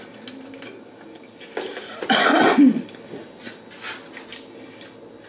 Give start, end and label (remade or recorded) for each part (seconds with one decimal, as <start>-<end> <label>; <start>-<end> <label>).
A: 0.0-5.3 recorded